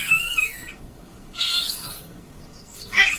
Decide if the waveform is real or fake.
fake